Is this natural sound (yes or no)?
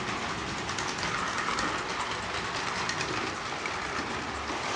yes